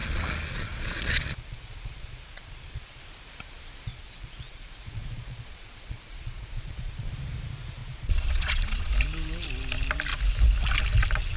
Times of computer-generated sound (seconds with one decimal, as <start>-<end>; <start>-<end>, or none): 0.0-3.0; 3.9-7.1; 7.8-8.9